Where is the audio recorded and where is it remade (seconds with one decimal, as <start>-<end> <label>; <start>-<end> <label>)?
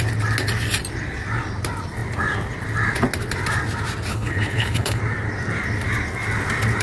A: 0.0-4.1 recorded; 4.1-5.0 remade; 5.0-6.8 recorded